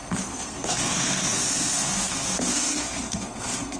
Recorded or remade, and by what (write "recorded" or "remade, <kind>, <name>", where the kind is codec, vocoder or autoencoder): remade, codec, SNAC